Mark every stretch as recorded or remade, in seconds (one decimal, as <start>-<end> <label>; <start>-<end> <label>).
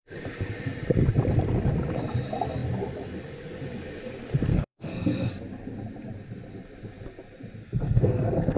0.0-4.5 recorded; 4.5-5.3 remade; 5.3-7.6 recorded; 7.6-8.6 remade